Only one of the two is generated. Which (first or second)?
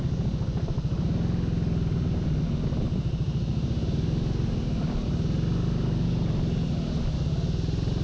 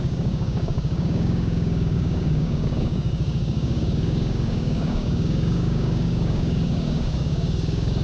second